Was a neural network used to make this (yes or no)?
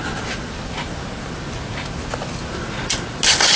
no